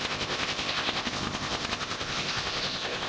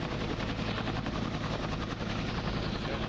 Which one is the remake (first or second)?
first